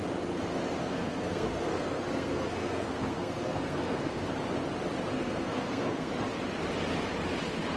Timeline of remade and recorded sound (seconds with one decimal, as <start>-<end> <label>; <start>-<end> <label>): 0.0-0.8 recorded; 0.8-4.3 remade; 4.3-5.1 recorded; 5.1-6.1 remade; 6.1-7.8 recorded